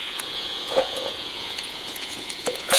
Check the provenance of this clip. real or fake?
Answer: fake